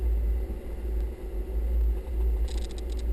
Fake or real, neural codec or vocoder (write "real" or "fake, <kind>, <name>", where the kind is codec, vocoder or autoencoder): real